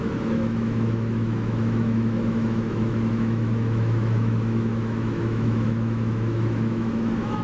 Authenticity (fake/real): fake